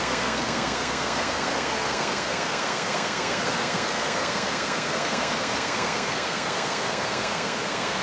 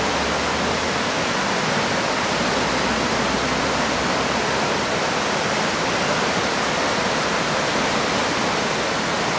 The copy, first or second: first